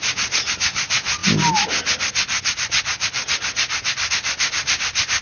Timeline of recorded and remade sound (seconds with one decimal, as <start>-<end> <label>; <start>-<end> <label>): 0.0-5.2 recorded